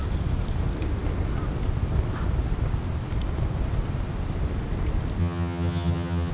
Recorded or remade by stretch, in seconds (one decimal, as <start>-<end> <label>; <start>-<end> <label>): 0.0-5.2 recorded; 5.2-6.3 remade